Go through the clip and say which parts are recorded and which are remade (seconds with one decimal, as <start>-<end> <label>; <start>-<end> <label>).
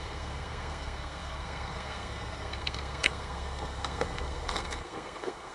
0.0-5.5 remade